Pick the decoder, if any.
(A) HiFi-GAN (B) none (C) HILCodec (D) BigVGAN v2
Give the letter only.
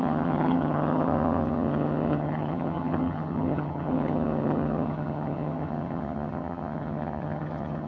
A